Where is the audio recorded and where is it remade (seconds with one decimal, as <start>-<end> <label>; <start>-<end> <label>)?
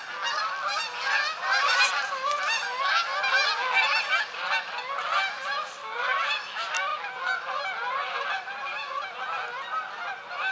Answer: 0.0-10.5 recorded